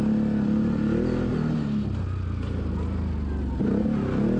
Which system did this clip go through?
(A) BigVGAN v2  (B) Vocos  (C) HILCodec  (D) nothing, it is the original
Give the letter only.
D